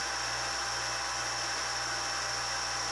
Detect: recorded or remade recorded